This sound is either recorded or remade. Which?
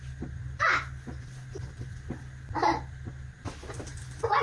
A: recorded